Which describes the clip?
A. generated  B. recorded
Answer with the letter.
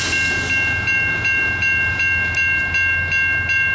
B